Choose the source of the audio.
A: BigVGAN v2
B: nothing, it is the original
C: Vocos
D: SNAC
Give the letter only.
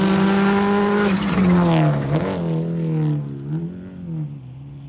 B